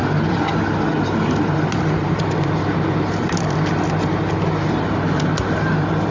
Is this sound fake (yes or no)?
no